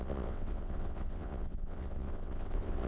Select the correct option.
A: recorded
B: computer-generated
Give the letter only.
B